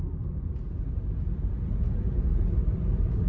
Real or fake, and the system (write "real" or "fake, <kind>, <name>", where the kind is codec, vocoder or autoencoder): real